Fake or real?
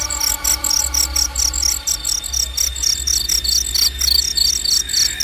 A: real